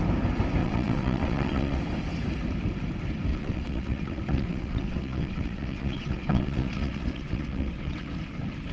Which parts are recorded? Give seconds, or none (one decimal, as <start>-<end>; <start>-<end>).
0.0-0.6; 1.8-3.3; 8.1-8.7